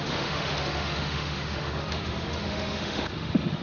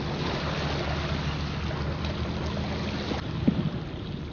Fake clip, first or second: first